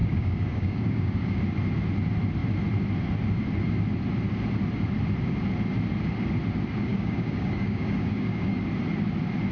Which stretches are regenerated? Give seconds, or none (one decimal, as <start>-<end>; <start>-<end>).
0.0-1.4; 6.9-8.6